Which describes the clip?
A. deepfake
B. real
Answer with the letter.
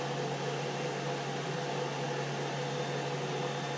B